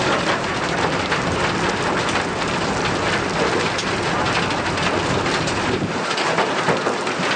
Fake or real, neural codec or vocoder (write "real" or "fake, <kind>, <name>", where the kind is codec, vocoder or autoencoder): real